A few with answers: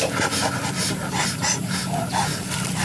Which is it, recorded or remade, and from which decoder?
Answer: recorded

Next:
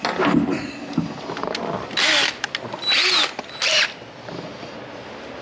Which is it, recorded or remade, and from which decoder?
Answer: recorded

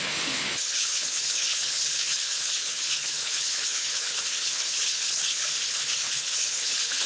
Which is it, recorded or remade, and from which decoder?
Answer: remade, codec, HILCodec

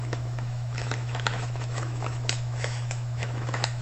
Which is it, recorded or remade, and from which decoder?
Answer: remade, autoencoder, DAC-VAE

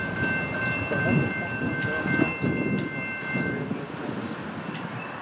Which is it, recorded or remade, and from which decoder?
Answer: recorded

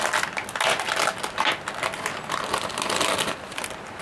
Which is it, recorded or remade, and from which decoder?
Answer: recorded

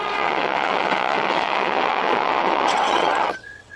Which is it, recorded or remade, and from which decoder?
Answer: remade, vocoder, WaveNeXt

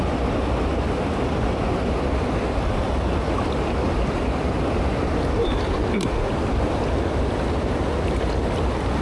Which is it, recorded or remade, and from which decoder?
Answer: recorded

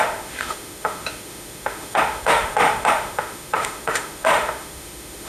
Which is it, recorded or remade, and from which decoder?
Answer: remade, autoencoder, DAC-VAE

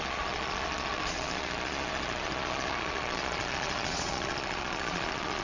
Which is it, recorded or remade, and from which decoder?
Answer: remade, vocoder, Vocos